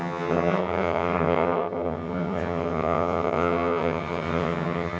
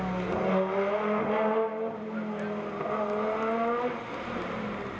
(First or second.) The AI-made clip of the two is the first